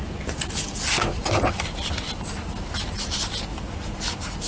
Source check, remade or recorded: recorded